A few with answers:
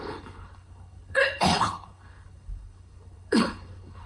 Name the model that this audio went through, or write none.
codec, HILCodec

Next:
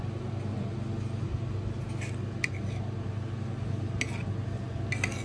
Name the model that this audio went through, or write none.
none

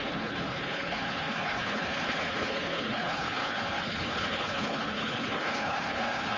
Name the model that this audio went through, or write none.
codec, HILCodec